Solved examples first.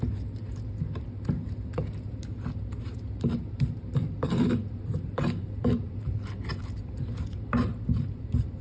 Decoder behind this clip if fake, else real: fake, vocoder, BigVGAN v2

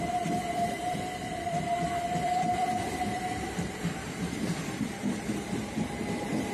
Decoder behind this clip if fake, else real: fake, vocoder, BigVGAN v2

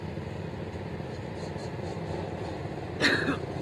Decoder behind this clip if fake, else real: real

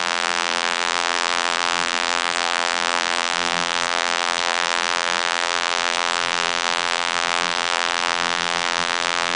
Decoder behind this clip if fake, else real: fake, vocoder, BigVGAN v2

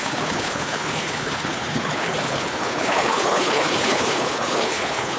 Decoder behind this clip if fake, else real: fake, codec, HILCodec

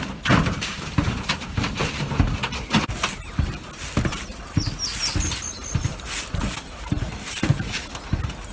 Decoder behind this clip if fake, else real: real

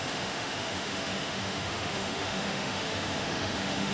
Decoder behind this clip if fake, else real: fake, autoencoder, DAC-VAE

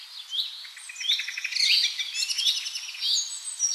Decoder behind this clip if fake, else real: real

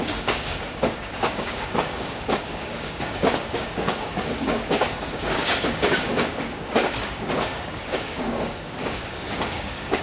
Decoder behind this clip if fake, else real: fake, codec, DAC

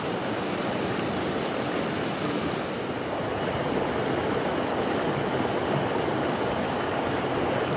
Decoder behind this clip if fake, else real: real